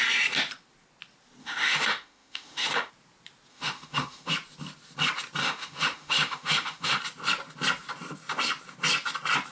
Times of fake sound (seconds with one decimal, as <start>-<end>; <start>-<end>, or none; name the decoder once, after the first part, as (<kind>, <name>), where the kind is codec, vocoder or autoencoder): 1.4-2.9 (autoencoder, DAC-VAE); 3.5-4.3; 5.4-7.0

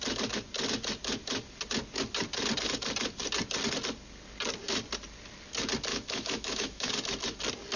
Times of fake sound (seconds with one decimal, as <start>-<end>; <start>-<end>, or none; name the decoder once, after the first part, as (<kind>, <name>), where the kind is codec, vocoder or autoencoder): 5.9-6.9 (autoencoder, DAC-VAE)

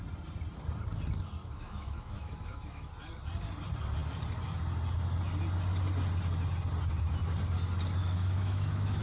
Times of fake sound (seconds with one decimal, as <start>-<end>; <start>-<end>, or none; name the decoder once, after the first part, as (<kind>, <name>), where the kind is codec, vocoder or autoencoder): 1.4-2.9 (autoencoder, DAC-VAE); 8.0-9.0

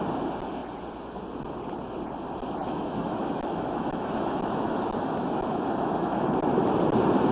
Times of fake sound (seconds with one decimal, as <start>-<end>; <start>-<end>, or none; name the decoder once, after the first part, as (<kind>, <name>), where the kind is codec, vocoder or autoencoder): 2.6-6.4 (autoencoder, DAC-VAE)